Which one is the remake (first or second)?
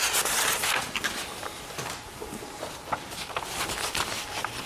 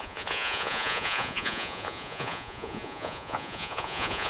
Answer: second